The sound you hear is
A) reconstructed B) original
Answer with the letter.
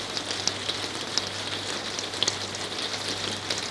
B